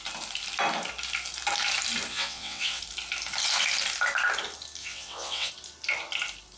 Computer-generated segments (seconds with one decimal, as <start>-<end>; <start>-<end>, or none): 2.1-2.8; 4.8-5.5